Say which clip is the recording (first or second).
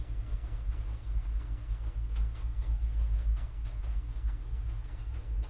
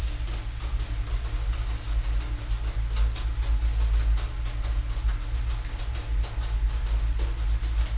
second